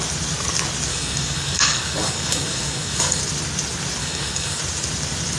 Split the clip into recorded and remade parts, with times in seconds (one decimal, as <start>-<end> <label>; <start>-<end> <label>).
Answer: 0.0-0.9 recorded; 0.9-3.2 remade; 3.2-4.0 recorded; 4.0-4.6 remade; 4.6-5.4 recorded